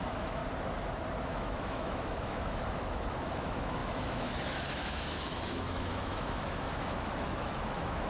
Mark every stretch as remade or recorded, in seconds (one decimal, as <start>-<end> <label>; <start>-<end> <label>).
0.0-0.4 remade; 0.4-1.3 recorded; 1.3-8.1 remade